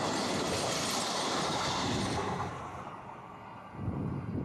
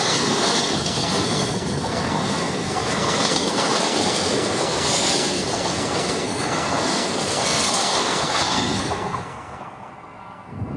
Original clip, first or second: first